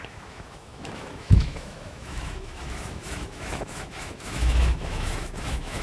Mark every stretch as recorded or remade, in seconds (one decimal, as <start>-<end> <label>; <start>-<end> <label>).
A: 0.0-5.8 remade